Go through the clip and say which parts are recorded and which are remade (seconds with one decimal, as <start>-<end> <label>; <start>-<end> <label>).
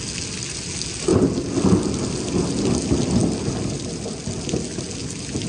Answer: 0.0-5.5 recorded